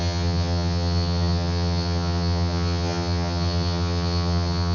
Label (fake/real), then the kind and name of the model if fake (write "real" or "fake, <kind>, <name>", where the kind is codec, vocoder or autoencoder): fake, vocoder, HiFi-GAN